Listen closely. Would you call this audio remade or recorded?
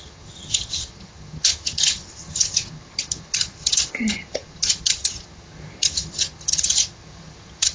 remade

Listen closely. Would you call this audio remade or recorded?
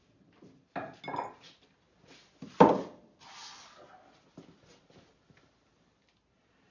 recorded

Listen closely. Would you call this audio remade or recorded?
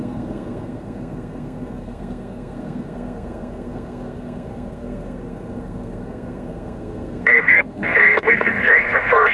remade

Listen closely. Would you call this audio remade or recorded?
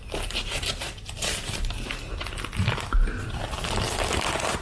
recorded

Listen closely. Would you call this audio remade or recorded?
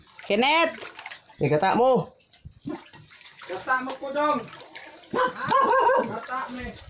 recorded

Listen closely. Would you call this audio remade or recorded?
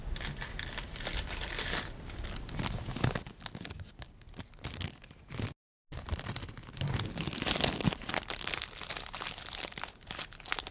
recorded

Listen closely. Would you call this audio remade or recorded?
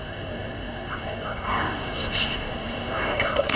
remade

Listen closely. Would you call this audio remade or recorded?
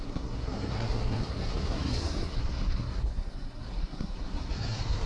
remade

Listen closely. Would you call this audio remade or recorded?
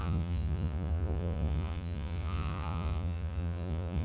remade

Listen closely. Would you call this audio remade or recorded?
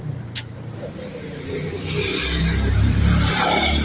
remade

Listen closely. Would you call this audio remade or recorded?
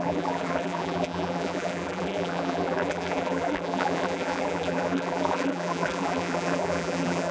remade